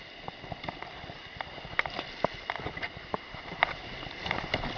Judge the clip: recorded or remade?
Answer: recorded